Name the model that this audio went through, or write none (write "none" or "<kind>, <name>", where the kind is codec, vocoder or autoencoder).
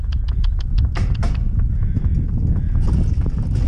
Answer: none